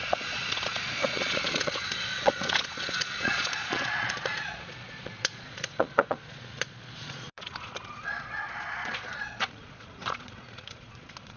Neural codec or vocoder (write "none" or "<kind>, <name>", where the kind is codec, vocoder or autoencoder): vocoder, Vocos